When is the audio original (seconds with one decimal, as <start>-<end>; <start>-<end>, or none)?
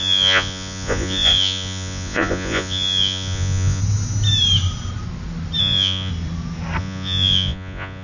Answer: 3.8-5.6; 6.1-6.8